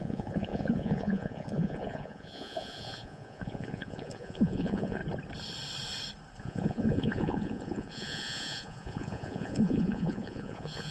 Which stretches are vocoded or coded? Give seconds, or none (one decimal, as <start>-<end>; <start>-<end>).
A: 0.0-5.0; 6.4-10.9